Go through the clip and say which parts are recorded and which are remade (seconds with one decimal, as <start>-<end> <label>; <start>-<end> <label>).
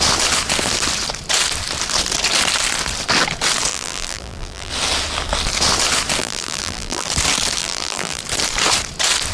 0.0-3.7 recorded; 3.7-4.7 remade; 4.7-6.2 recorded; 6.2-7.1 remade; 7.1-7.6 recorded; 7.6-8.2 remade; 8.2-9.3 recorded